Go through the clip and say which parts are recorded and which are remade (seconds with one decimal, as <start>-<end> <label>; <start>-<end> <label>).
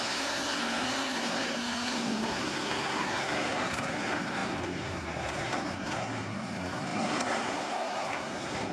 0.0-8.7 remade